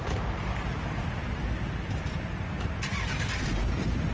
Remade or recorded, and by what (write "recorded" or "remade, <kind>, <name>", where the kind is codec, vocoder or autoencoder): recorded